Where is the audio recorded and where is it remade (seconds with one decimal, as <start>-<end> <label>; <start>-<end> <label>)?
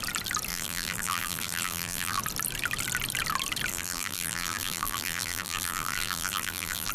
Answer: 0.0-0.5 recorded; 0.5-2.2 remade; 2.2-3.7 recorded; 3.7-6.9 remade